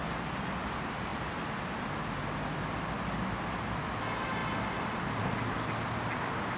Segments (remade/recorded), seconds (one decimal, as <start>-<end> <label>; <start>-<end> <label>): 0.0-6.6 recorded